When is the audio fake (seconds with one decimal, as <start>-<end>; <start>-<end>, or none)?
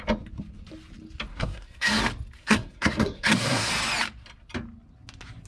1.3-2.0; 2.4-3.7